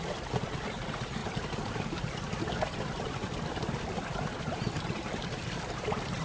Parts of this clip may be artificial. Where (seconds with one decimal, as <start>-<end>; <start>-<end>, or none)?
1.2-4.9